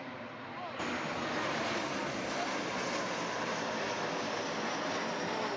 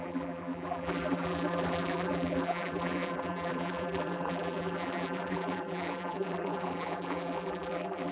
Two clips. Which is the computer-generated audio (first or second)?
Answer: second